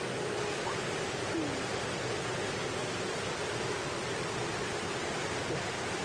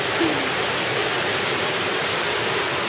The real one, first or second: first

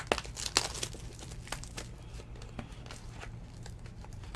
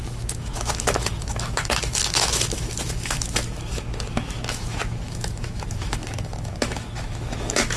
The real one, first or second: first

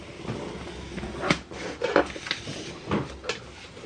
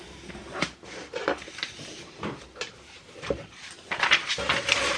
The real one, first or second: first